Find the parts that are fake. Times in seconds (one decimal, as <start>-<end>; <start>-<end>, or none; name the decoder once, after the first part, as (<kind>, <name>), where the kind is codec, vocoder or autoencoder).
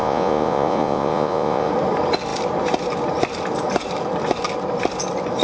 0.0-1.7 (vocoder, Vocos)